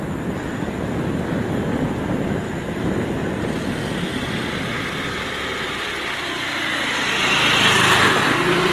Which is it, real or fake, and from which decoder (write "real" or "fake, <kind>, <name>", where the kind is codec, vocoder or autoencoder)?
real